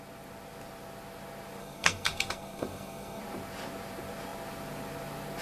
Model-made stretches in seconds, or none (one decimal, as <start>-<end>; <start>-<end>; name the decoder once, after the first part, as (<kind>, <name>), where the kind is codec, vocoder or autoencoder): 1.6-3.2 (codec, SNAC)